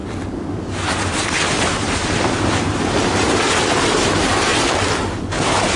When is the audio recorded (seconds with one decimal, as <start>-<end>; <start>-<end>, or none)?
0.0-5.8